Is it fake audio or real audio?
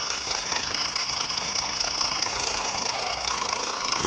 fake